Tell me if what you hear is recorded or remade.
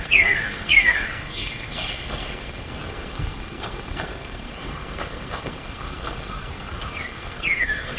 remade